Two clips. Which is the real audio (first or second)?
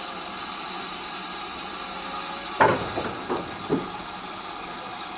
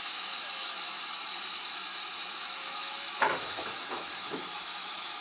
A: first